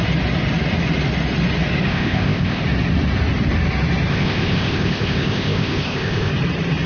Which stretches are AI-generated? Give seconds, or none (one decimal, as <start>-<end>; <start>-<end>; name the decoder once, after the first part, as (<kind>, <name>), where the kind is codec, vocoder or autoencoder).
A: 1.9-2.6 (codec, ZipCodec); 4.1-6.3